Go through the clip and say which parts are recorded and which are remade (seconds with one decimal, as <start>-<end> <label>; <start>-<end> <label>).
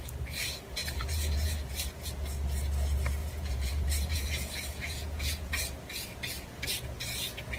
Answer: 0.0-0.8 recorded; 0.8-2.1 remade; 2.1-3.2 recorded; 3.2-5.6 remade; 5.6-7.6 recorded